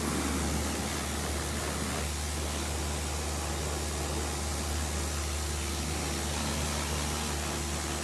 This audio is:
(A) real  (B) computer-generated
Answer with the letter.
A